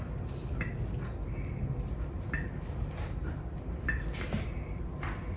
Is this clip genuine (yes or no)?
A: yes